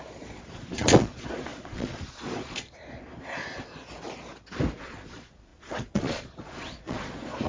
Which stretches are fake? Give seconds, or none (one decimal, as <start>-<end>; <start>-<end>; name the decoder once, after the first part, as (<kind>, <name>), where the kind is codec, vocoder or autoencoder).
0.0-3.4 (vocoder, Vocos); 4.8-7.5